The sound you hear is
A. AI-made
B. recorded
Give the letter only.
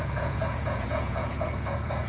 A